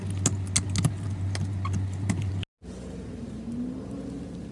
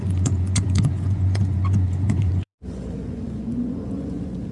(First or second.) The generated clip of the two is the second